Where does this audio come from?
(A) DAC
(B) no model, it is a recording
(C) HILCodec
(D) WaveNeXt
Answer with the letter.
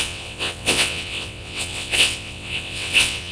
D